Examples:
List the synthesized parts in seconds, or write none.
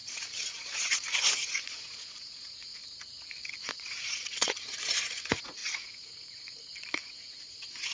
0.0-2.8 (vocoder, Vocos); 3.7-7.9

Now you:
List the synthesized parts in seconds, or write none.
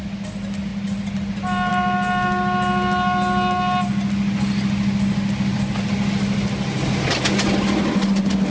none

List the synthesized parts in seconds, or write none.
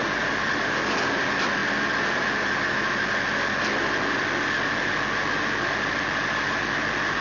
none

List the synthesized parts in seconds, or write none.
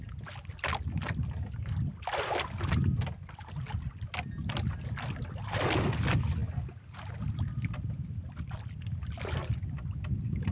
none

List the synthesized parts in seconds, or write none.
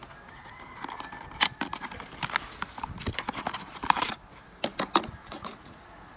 5.2-6.2 (vocoder, Vocos)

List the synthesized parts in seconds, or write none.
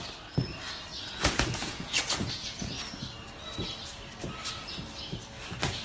0.9-2.6 (vocoder, Vocos)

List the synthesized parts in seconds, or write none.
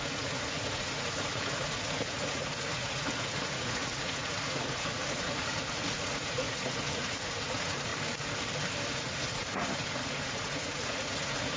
0.0-7.9 (vocoder, Vocos); 8.9-11.6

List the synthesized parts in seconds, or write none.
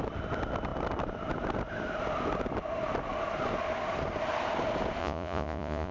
5.0-5.9 (vocoder, Vocos)